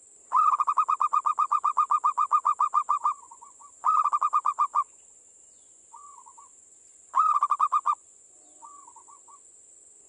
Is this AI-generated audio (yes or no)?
yes